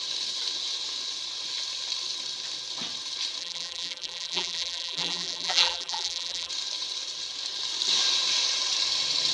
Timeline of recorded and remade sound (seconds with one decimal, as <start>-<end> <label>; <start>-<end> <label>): 0.0-3.4 recorded; 3.4-6.5 remade; 6.5-9.3 recorded